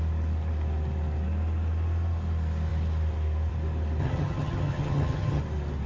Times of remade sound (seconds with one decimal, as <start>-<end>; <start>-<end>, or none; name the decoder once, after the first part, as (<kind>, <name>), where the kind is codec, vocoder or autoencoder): 4.0-5.4 (vocoder, HiFi-GAN)